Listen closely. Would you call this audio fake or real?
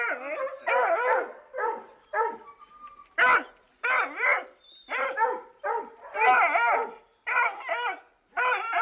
real